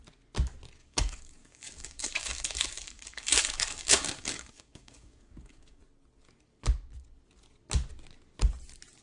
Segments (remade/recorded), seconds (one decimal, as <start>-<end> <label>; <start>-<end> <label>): 0.0-0.8 recorded; 0.8-5.8 remade; 5.8-9.0 recorded

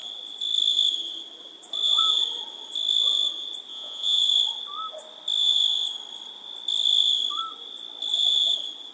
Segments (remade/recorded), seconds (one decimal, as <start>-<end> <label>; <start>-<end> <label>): 0.0-3.7 recorded; 3.7-4.2 remade; 4.2-8.9 recorded